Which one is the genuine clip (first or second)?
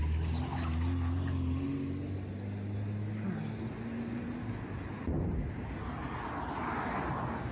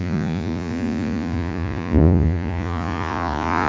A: first